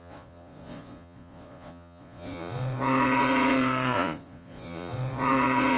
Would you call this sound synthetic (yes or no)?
yes